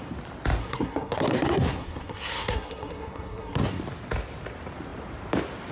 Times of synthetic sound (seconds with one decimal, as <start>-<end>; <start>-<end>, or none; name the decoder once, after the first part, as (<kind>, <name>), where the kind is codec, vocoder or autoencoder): 0.6-3.8 (codec, SNAC)